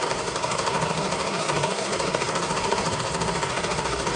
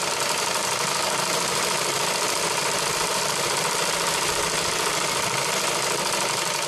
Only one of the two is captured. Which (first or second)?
second